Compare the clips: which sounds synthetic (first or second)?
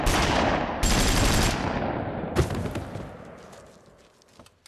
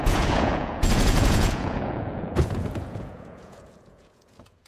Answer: second